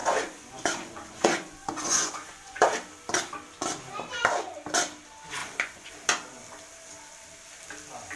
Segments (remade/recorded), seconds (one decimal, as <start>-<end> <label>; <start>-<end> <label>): 0.0-2.6 remade; 2.6-5.4 recorded; 5.4-5.9 remade; 5.9-8.2 recorded